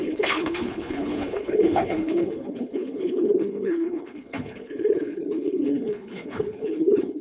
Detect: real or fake fake